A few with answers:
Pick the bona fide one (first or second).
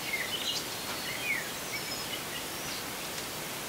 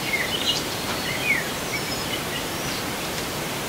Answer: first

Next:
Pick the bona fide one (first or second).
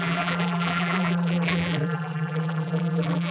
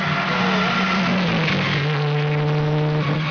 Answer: second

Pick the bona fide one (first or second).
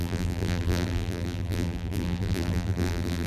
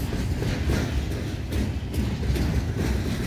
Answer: second